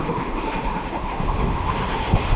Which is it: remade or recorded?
remade